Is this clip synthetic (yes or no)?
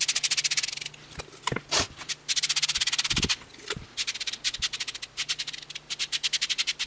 no